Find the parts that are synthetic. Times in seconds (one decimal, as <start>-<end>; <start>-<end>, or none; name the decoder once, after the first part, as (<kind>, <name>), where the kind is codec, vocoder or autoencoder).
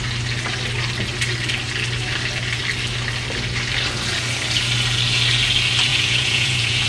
5.9-6.9 (vocoder, Vocos)